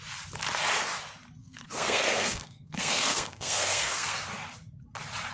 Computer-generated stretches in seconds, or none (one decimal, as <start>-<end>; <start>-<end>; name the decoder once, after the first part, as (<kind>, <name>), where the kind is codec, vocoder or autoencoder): 1.4-4.2 (codec, SNAC)

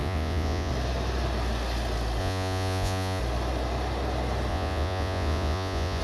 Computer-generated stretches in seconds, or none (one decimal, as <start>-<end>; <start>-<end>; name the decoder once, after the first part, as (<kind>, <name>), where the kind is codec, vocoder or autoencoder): 0.0-0.7 (vocoder, Vocos); 2.2-3.2; 4.5-6.0

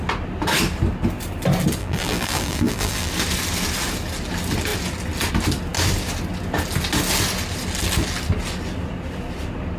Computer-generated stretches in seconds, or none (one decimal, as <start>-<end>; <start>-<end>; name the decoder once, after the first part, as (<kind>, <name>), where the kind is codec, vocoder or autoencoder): 1.8-3.1 (vocoder, BigVGAN v2)

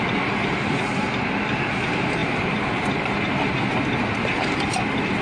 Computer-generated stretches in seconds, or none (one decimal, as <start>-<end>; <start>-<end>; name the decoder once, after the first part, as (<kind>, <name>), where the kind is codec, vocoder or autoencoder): 2.2-3.3 (vocoder, BigVGAN v2)

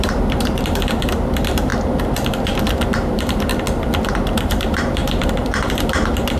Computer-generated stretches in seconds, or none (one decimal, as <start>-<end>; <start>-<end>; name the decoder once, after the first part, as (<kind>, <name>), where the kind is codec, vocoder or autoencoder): 0.0-1.7 (vocoder, BigVGAN v2); 2.3-3.5; 4.1-6.4

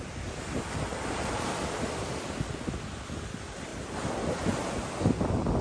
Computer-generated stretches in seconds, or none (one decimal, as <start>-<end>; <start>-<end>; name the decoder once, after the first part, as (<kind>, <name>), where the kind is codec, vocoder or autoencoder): 0.9-1.6 (vocoder, BigVGAN v2)

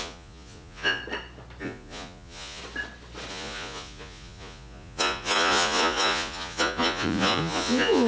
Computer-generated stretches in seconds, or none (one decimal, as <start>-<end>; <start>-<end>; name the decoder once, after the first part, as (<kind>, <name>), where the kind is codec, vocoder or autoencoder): 0.0-1.0 (vocoder, Vocos); 1.6-2.6; 3.3-8.1